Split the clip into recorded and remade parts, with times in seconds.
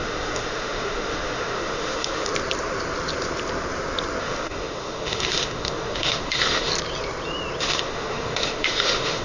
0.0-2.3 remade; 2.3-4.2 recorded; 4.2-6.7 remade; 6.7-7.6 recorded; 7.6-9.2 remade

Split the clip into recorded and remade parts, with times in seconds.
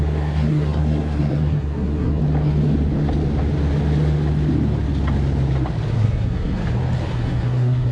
0.0-2.2 remade; 2.2-5.9 recorded; 5.9-6.6 remade; 6.6-7.1 recorded; 7.1-7.9 remade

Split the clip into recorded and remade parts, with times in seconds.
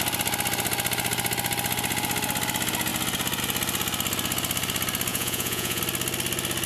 0.0-5.1 recorded; 5.1-5.8 remade; 5.8-6.7 recorded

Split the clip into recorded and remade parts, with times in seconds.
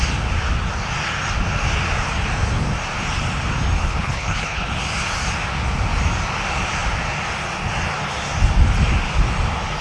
0.0-3.8 recorded; 3.8-4.7 remade; 4.7-9.8 recorded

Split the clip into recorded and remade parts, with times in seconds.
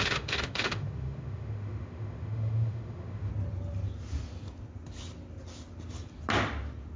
0.0-3.3 remade; 3.3-7.0 recorded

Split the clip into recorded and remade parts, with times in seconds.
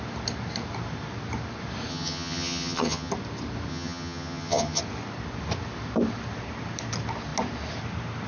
0.0-1.9 recorded; 1.9-3.1 remade; 3.1-3.7 recorded; 3.7-4.8 remade; 4.8-8.3 recorded